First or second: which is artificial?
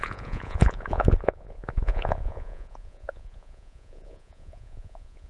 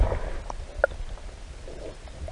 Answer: first